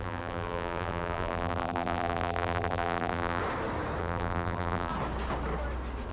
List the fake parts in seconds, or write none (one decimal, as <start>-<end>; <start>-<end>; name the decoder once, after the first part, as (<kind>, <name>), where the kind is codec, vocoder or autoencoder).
0.0-3.4 (vocoder, BigVGAN v2); 4.0-4.9